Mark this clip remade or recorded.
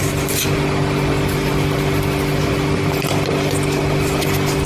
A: recorded